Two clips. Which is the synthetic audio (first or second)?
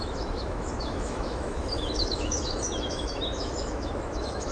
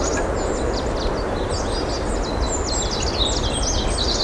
first